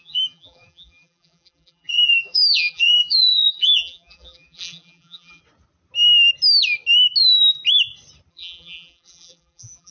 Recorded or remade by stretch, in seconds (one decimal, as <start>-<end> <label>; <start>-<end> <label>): 0.0-5.4 remade; 5.4-8.3 recorded; 8.3-9.9 remade